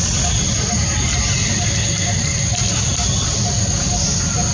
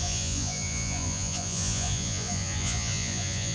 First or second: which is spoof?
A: second